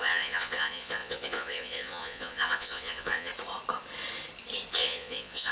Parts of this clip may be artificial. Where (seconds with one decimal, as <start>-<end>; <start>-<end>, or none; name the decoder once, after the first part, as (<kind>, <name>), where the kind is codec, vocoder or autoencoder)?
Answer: 0.0-3.3 (vocoder, Vocos); 4.7-5.5